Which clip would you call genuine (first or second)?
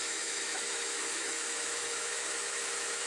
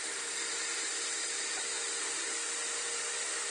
second